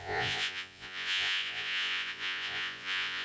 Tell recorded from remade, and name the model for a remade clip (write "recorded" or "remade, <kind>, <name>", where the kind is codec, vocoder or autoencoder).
remade, vocoder, Vocos